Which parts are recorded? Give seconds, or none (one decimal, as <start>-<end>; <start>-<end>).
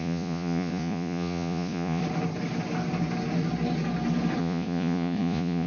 2.0-4.4